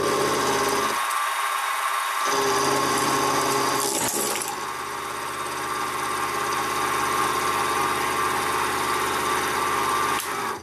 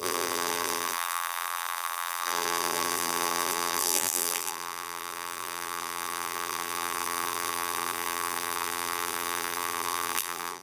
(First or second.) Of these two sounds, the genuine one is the first